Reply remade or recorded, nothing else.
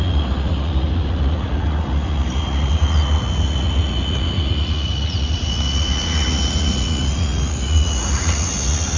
remade